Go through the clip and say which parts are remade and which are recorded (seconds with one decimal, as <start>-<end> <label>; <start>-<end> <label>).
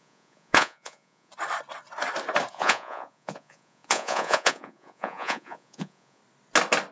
0.0-1.3 remade; 1.3-2.5 recorded; 2.5-6.2 remade; 6.2-6.9 recorded